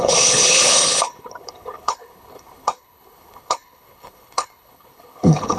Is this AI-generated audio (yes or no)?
yes